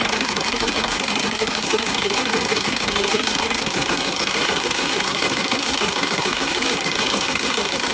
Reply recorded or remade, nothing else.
remade